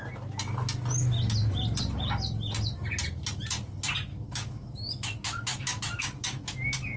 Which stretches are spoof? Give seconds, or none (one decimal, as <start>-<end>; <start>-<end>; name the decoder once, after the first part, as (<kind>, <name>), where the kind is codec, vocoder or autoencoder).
4.1-7.0 (autoencoder, DAC-VAE)